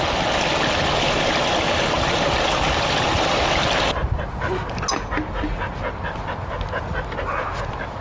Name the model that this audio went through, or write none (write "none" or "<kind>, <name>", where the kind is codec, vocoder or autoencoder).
none